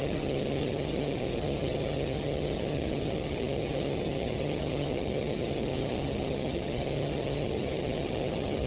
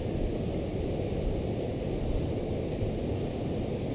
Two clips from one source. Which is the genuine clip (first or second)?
second